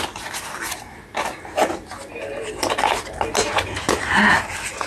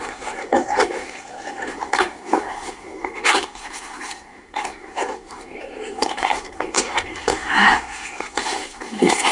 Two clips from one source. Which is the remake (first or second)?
second